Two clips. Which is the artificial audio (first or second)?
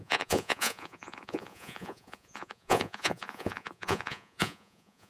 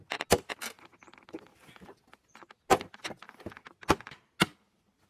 first